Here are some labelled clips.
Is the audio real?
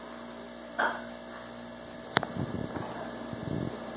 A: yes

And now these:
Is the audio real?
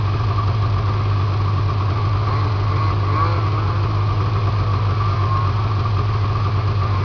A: yes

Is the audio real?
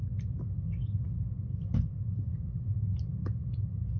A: yes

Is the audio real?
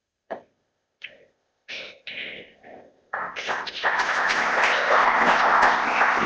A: no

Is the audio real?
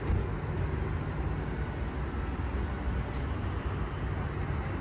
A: yes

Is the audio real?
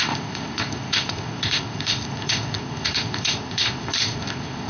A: no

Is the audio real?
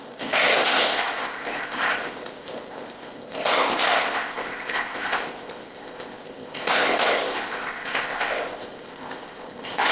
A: no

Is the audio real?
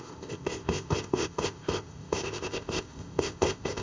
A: no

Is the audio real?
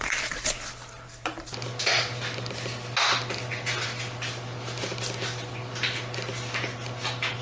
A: yes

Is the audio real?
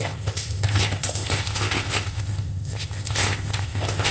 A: no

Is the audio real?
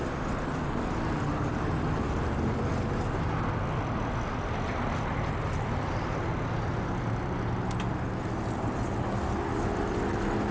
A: yes